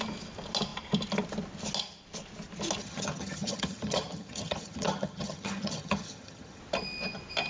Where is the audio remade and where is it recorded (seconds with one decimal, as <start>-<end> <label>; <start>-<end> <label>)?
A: 0.0-2.8 recorded; 2.8-6.6 remade; 6.6-7.5 recorded